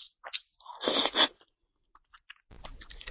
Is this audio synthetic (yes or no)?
no